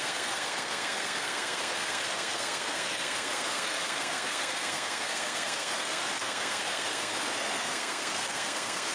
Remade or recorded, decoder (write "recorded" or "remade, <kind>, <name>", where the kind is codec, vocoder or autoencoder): remade, codec, SNAC